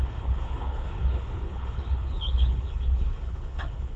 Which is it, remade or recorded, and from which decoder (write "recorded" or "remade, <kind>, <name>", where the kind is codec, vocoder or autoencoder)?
remade, codec, HILCodec